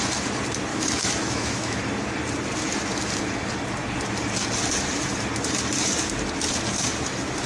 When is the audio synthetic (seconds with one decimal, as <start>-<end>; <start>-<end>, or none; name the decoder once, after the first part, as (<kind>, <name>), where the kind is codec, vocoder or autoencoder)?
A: 0.7-1.8 (autoencoder, DAC-VAE)